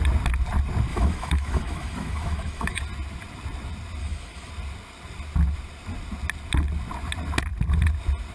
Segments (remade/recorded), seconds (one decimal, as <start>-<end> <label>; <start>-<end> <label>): 0.0-0.9 recorded; 0.9-2.8 remade; 2.8-4.0 recorded; 4.0-4.5 remade; 4.5-8.3 recorded